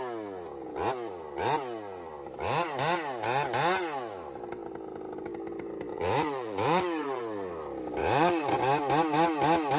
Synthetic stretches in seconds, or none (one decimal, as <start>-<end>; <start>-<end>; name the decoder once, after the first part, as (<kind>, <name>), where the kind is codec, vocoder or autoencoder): 5.9-7.2 (vocoder, Vocos); 8.0-8.6